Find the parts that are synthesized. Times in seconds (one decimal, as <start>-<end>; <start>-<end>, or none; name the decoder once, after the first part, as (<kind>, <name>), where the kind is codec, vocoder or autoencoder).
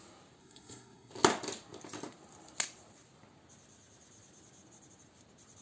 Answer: 0.4-1.1 (codec, SNAC)